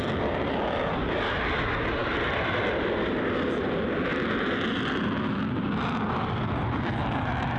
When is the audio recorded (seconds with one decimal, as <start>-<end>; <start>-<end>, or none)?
0.0-0.6; 1.2-2.0; 2.6-4.1